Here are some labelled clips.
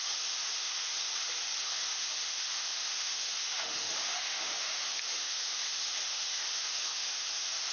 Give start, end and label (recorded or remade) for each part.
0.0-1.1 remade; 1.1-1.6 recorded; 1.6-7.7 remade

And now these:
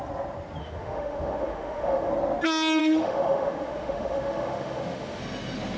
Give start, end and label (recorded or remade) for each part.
0.0-0.6 recorded; 0.6-2.1 remade; 2.1-2.8 recorded; 2.8-5.2 remade; 5.2-5.8 recorded

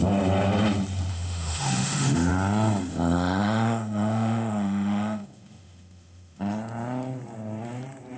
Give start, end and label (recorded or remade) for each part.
0.0-1.1 recorded; 1.1-2.3 remade; 2.3-2.9 recorded; 2.9-6.4 remade; 6.4-8.2 recorded

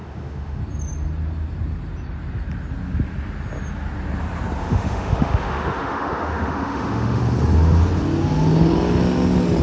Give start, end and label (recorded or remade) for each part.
0.0-0.6 remade; 0.6-4.6 recorded; 4.6-7.2 remade; 7.2-9.6 recorded

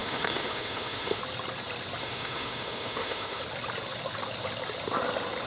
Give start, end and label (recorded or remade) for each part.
0.0-1.2 remade; 1.2-2.0 recorded; 2.0-3.4 remade; 3.4-5.5 recorded

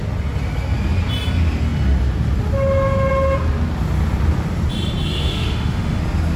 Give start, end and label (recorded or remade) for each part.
0.0-5.3 recorded; 5.3-6.0 remade; 6.0-6.4 recorded

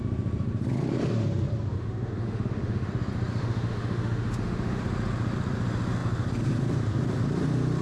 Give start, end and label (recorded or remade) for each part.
0.0-1.7 recorded; 1.7-2.9 remade; 2.9-3.4 recorded; 3.4-4.8 remade; 4.8-7.8 recorded